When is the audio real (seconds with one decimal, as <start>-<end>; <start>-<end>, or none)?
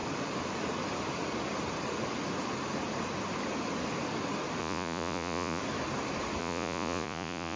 0.0-4.6; 5.6-6.4